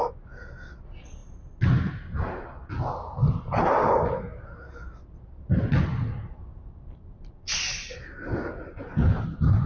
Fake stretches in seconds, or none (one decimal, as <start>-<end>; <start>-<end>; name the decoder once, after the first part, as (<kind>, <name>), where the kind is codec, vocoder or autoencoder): none